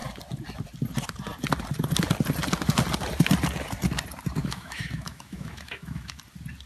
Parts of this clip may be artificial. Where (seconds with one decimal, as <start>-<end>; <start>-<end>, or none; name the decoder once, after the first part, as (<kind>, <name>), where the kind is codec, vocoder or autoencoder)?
4.4-6.2 (autoencoder, DAC-VAE)